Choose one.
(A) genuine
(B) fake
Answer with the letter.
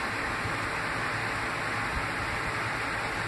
A